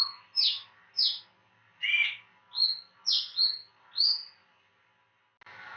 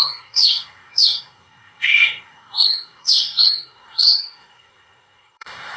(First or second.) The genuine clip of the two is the first